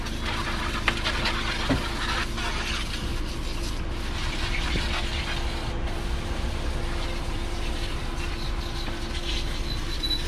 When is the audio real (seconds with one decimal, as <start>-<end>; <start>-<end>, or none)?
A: 0.0-10.3